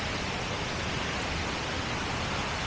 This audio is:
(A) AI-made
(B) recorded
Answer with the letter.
B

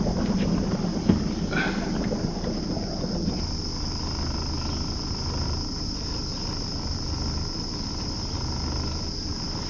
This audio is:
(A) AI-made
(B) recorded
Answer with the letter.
B